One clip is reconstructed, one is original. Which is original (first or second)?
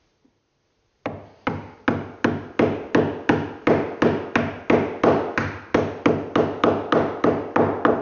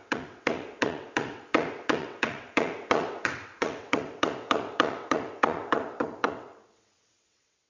first